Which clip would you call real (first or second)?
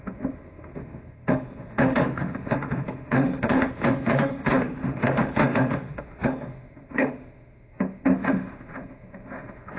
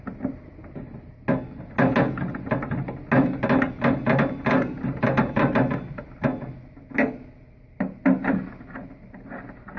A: second